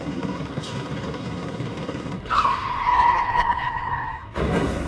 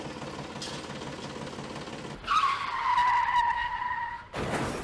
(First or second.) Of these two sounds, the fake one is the first